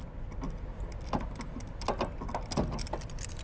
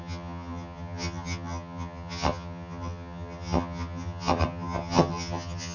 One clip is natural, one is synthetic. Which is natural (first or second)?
first